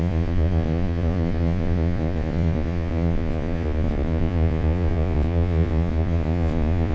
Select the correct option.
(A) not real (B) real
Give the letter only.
A